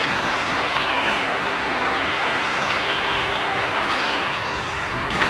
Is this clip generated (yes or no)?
yes